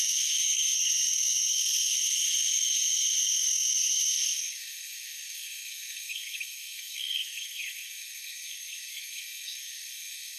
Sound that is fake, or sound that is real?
fake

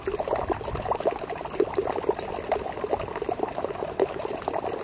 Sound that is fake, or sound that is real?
real